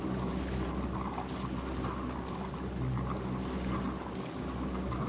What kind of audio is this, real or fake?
real